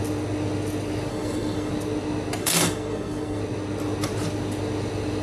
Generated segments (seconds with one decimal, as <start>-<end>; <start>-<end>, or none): 1.1-1.7; 2.4-3.4